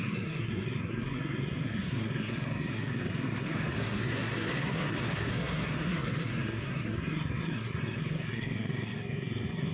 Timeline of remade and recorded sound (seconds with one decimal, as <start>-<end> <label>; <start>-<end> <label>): 0.0-9.7 remade